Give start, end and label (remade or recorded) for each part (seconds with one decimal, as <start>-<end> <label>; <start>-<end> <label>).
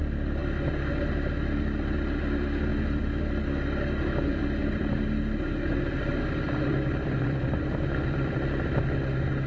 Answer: 0.0-2.7 recorded; 2.7-3.4 remade; 3.4-4.3 recorded; 4.3-8.8 remade; 8.8-9.5 recorded